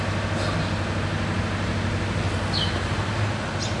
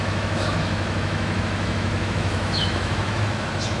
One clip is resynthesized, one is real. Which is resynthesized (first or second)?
second